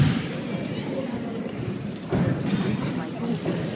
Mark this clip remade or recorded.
remade